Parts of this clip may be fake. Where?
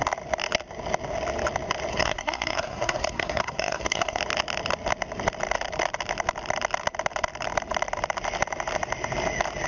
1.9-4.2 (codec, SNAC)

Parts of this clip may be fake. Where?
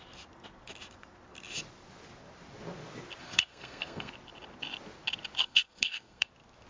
3.2-4.1 (codec, SNAC); 5.4-6.3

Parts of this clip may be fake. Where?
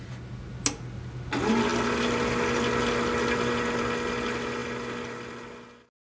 none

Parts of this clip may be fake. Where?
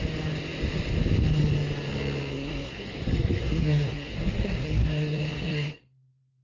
2.3-6.4 (codec, SNAC)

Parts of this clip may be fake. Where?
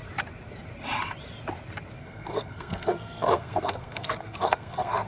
2.0-5.1 (codec, SNAC)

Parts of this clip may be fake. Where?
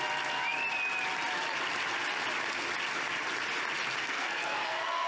4.0-5.1 (codec, SNAC)